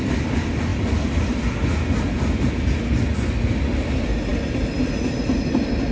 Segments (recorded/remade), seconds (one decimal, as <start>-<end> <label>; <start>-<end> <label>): 0.0-5.9 recorded

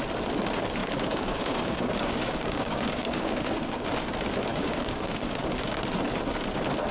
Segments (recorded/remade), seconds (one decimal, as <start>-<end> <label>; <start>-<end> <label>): 0.0-0.8 recorded; 0.8-3.9 remade; 3.9-4.5 recorded; 4.5-5.8 remade; 5.8-6.9 recorded